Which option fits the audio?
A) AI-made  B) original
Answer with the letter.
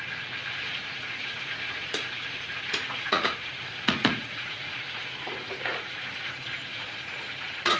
A